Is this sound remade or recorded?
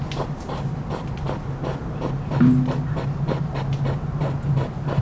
recorded